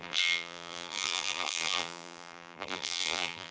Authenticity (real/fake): fake